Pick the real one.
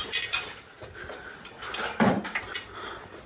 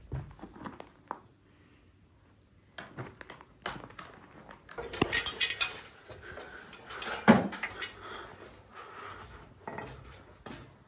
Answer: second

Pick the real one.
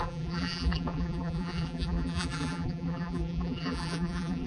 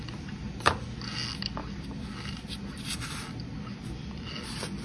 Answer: second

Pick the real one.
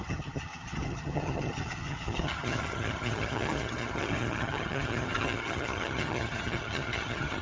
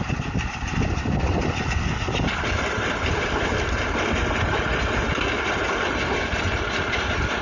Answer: second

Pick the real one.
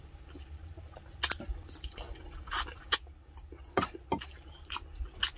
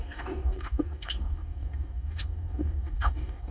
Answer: first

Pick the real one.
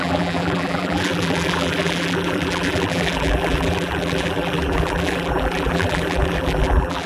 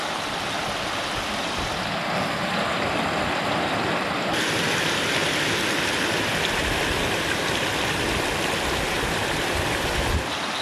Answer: second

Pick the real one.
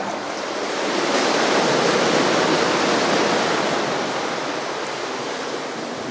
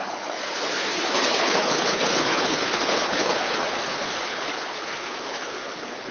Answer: first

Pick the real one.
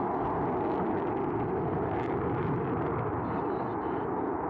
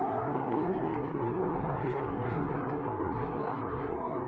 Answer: first